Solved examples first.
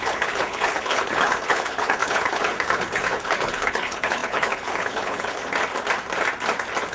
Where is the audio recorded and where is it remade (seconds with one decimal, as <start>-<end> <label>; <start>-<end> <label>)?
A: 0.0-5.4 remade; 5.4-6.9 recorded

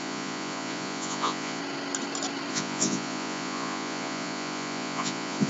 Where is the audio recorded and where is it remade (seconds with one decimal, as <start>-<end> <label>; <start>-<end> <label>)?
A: 0.0-1.6 remade; 1.6-2.5 recorded; 2.5-5.5 remade

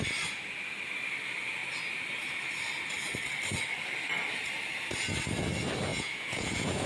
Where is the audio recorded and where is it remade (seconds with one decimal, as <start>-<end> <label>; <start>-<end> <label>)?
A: 0.0-5.9 recorded; 5.9-6.9 remade